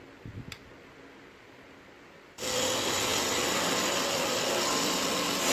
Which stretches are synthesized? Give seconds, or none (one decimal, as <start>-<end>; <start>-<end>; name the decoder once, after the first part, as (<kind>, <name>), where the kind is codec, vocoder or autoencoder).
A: none